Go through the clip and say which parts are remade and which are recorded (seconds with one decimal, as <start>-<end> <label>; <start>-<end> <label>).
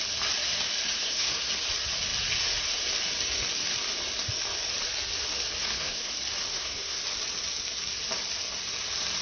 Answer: 0.0-1.0 recorded; 1.0-1.5 remade; 1.5-5.6 recorded; 5.6-6.1 remade; 6.1-6.5 recorded; 6.5-7.0 remade; 7.0-9.2 recorded